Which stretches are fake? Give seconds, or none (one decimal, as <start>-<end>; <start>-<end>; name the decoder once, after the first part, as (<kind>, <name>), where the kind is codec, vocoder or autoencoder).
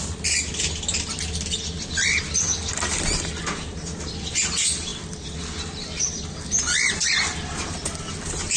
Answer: none